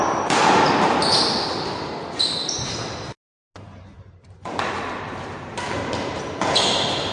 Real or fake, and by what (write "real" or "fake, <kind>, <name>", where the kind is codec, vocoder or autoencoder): real